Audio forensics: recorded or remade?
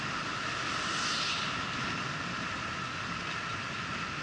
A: recorded